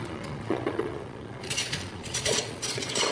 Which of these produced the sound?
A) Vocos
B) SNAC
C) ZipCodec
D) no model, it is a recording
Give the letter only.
A